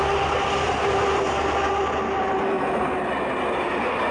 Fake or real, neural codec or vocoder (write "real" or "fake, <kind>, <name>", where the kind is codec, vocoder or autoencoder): real